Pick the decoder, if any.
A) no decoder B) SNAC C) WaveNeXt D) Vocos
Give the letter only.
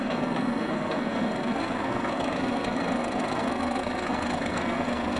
B